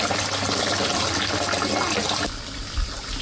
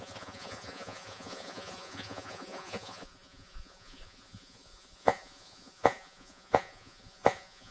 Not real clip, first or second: second